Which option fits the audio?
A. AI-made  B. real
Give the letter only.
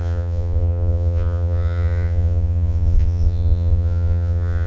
A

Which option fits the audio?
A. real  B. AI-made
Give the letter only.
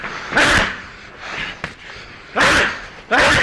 A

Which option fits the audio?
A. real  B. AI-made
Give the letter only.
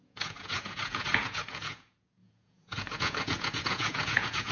B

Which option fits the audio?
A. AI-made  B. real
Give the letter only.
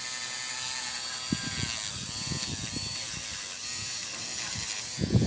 B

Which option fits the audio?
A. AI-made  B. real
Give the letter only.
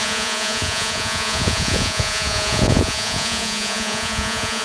A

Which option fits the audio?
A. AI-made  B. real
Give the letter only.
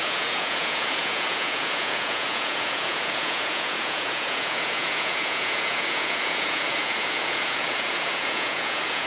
A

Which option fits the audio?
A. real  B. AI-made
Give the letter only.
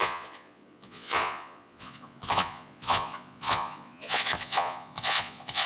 B